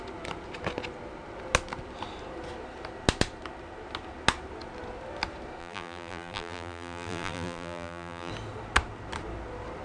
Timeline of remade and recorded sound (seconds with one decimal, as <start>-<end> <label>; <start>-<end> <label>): 0.0-5.6 recorded; 5.6-8.3 remade; 8.3-9.8 recorded